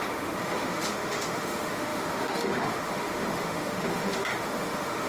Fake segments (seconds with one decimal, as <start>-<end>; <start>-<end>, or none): 0.0-5.1